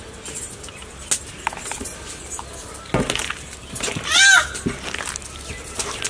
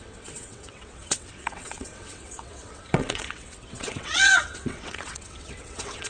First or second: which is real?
first